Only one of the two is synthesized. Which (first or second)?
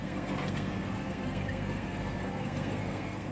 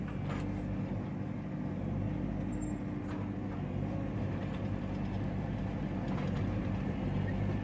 first